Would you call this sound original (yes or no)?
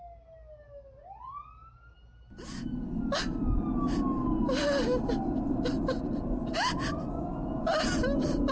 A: yes